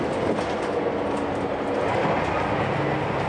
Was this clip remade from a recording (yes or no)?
no